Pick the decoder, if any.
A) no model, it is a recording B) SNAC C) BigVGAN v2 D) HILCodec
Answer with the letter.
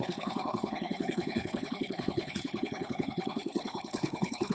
D